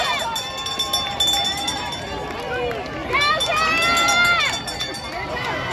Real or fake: real